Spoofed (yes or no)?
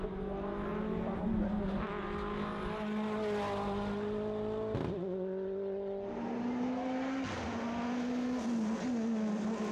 no